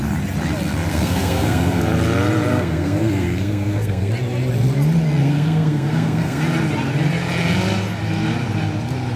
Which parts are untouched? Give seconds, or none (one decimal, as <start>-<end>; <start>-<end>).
0.0-0.9; 1.8-2.5; 4.1-5.2; 6.4-9.2